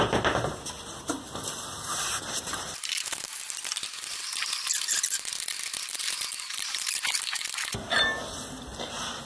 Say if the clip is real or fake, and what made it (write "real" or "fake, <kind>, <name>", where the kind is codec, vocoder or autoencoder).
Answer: fake, vocoder, BigVGAN v2